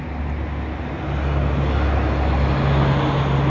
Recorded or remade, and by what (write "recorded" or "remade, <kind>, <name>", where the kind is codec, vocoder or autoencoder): recorded